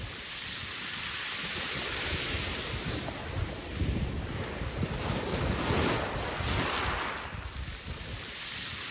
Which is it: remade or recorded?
recorded